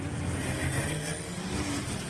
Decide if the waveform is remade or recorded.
recorded